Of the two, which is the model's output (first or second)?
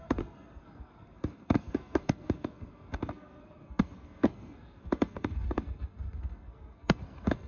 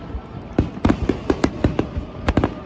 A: first